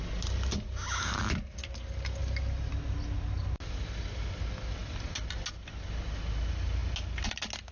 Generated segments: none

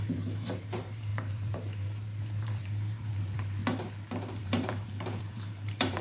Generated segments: 0.0-3.6 (vocoder, BigVGAN v2); 4.4-6.0

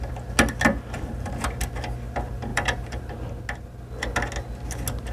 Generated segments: 0.7-1.3 (vocoder, BigVGAN v2); 2.5-3.1

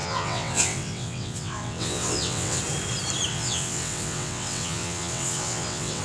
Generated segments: 0.0-2.6 (vocoder, WaveNeXt); 3.3-6.0

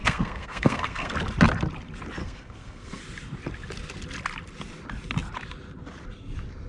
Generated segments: 0.0-1.1 (codec, SNAC); 2.2-3.0

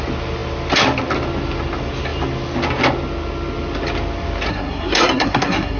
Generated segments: 4.5-5.8 (codec, SNAC)